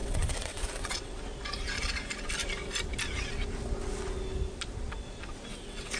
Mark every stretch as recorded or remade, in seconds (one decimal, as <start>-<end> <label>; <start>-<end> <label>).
0.0-1.2 remade; 1.2-5.5 recorded; 5.5-6.0 remade